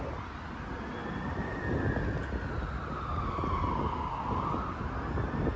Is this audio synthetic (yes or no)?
no